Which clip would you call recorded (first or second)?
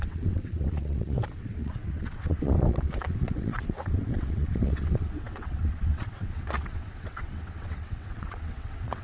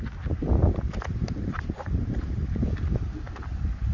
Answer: second